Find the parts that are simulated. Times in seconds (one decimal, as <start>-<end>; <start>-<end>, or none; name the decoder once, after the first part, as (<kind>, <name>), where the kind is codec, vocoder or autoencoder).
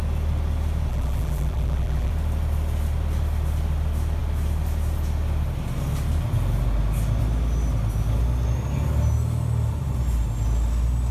0.9-2.1 (vocoder, BigVGAN v2)